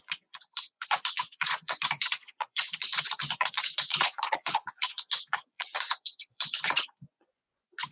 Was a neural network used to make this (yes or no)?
yes